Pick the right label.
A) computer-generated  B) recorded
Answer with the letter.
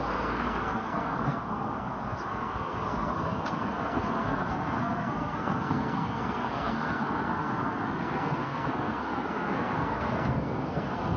A